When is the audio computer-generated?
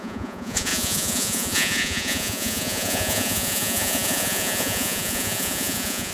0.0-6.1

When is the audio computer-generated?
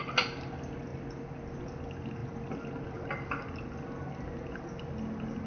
none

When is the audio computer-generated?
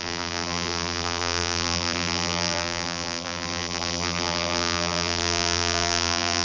0.0-6.4